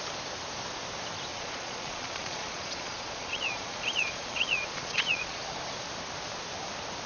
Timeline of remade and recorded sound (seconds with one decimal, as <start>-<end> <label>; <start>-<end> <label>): 0.0-1.3 recorded; 1.3-5.4 remade; 5.4-7.1 recorded